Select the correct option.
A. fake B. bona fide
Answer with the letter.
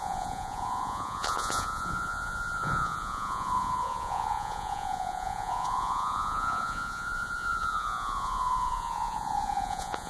A